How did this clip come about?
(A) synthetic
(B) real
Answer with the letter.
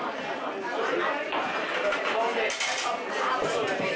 B